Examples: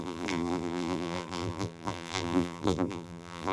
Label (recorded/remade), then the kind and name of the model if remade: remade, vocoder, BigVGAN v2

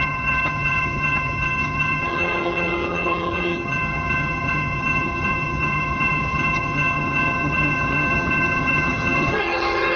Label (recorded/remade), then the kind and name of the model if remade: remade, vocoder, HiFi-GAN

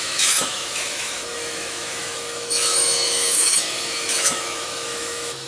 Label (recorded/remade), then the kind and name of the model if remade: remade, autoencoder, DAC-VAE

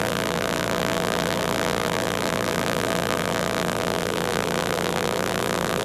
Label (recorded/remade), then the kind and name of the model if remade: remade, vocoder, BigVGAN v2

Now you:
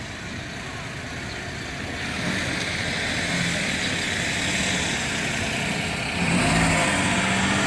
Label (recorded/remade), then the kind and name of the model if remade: recorded